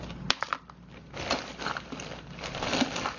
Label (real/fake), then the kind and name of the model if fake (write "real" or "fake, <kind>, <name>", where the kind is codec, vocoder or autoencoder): real